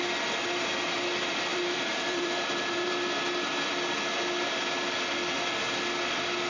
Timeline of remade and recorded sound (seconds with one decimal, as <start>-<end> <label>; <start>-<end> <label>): 0.0-1.5 recorded; 1.5-2.9 remade; 2.9-6.5 recorded